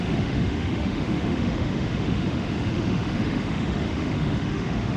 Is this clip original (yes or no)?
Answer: no